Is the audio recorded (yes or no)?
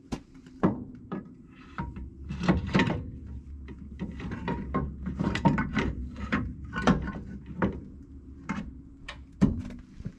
no